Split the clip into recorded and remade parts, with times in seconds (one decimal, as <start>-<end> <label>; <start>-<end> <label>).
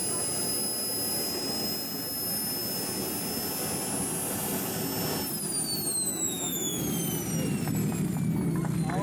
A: 0.0-6.1 recorded; 6.1-6.8 remade; 6.8-9.0 recorded